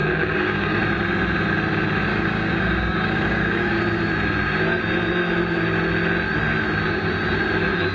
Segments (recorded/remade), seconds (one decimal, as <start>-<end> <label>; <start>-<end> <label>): 0.0-0.8 remade; 0.8-2.1 recorded; 2.1-3.8 remade; 3.8-7.9 recorded